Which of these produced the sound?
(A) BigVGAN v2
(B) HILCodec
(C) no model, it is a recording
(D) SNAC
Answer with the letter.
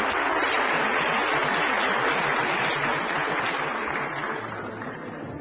C